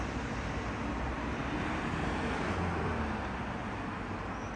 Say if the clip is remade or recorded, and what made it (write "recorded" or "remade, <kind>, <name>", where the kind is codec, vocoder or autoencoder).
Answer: recorded